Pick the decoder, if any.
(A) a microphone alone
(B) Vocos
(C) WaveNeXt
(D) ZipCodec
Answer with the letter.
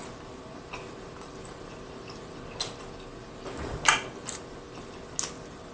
A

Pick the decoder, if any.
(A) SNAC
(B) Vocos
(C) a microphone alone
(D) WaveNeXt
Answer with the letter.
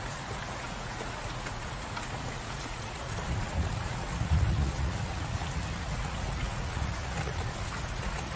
B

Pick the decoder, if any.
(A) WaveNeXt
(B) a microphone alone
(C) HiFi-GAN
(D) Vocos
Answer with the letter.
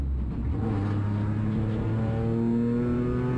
B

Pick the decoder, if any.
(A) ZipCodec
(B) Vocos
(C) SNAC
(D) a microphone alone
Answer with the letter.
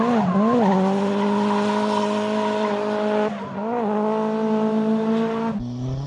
D